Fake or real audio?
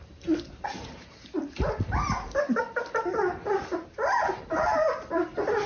real